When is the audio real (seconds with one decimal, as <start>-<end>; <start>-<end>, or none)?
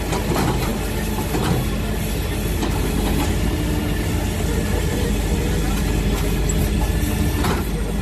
0.0-8.0